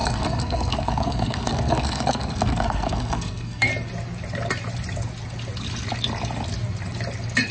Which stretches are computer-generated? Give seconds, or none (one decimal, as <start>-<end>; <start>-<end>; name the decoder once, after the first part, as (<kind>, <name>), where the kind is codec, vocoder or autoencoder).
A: 0.0-3.7 (codec, SNAC)